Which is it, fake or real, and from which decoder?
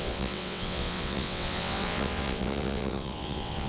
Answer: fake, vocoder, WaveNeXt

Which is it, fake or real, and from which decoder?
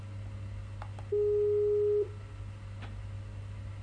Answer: real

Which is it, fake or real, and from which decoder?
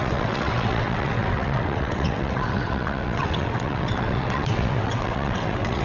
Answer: fake, vocoder, WaveNeXt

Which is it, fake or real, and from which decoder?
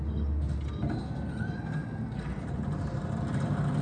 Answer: real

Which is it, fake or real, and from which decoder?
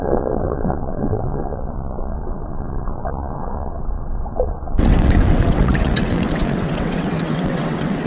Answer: fake, vocoder, WaveNeXt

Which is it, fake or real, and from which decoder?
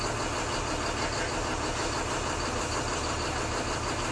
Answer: real